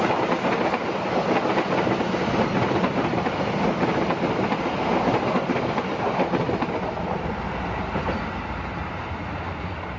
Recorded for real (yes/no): yes